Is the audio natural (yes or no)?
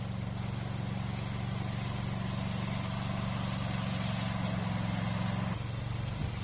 yes